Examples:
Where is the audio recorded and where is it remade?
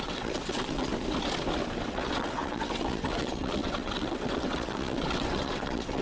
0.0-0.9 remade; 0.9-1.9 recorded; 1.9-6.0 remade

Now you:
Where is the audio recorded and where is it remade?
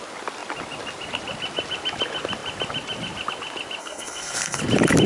0.0-3.8 recorded; 3.8-4.6 remade; 4.6-5.1 recorded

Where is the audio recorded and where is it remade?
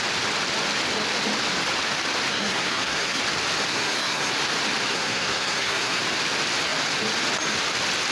0.0-2.3 recorded; 2.3-3.2 remade; 3.2-3.7 recorded; 3.7-4.3 remade; 4.3-4.9 recorded; 4.9-6.0 remade; 6.0-8.1 recorded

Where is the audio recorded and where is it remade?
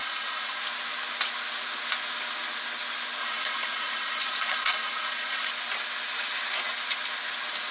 0.0-0.6 remade; 0.6-3.2 recorded; 3.2-5.5 remade; 5.5-7.7 recorded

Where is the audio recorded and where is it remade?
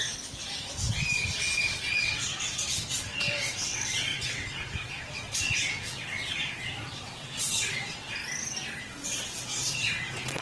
0.0-1.9 recorded; 1.9-8.2 remade; 8.2-8.8 recorded; 8.8-10.4 remade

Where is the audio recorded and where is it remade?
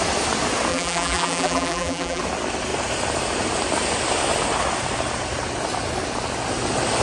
0.0-0.7 recorded; 0.7-2.2 remade; 2.2-7.0 recorded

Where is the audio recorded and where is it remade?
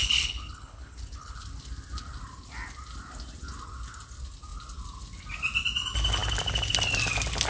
0.0-1.4 remade; 1.4-7.5 recorded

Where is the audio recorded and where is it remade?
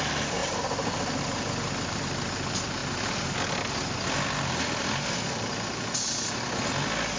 0.0-0.4 recorded; 0.4-2.0 remade; 2.0-7.2 recorded